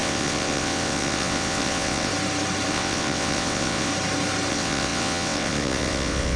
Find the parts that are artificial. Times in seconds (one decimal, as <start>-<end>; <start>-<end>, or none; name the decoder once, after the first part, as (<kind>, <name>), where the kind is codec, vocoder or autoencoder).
0.0-2.1 (vocoder, WaveNeXt); 2.7-3.9; 4.5-6.4